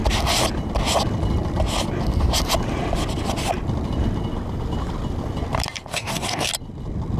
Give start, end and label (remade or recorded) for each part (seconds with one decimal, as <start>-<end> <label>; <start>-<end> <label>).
0.0-5.9 recorded; 5.9-6.5 remade; 6.5-7.2 recorded